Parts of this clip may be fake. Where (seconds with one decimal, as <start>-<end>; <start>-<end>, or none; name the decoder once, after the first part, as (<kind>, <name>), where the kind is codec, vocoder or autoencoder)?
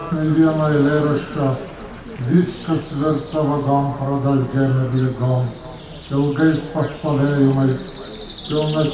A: 1.6-2.8 (vocoder, BigVGAN v2)